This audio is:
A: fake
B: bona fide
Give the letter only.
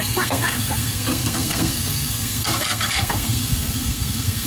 A